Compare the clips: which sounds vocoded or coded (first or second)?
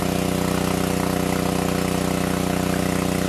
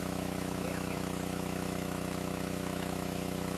second